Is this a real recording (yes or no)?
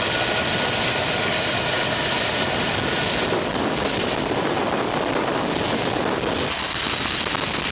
yes